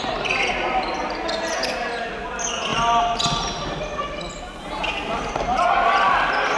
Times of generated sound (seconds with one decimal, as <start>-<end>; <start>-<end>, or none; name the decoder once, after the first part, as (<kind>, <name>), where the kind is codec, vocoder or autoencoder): none